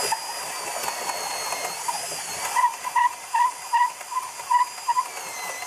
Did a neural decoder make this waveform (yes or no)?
no